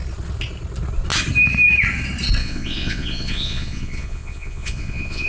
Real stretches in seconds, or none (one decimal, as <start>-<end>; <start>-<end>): 0.0-2.4